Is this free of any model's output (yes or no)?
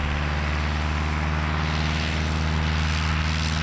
yes